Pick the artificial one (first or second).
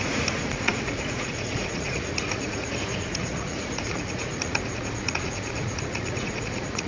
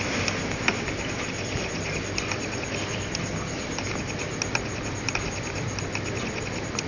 first